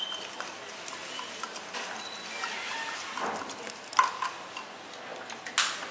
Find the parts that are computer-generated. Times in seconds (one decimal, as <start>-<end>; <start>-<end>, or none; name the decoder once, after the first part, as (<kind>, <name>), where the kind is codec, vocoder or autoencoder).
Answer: none

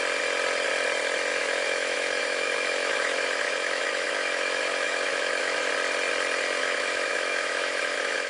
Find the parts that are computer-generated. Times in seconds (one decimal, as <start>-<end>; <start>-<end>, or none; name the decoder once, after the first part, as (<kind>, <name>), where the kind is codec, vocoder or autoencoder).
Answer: 1.3-5.7 (autoencoder, DAC-VAE); 6.6-8.3